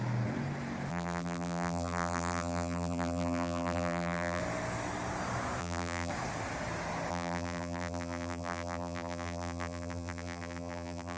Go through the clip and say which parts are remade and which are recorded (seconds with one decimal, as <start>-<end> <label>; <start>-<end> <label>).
0.0-0.9 recorded; 0.9-4.4 remade; 4.4-5.6 recorded; 5.6-6.1 remade; 6.1-7.1 recorded; 7.1-11.2 remade

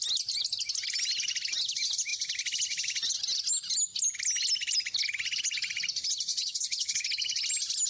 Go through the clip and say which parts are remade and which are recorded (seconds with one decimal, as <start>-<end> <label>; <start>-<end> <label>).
0.0-6.3 recorded; 6.3-7.0 remade; 7.0-7.9 recorded

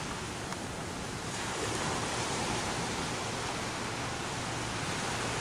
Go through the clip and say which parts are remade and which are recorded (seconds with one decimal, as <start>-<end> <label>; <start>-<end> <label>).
0.0-0.5 recorded; 0.5-3.0 remade; 3.0-5.4 recorded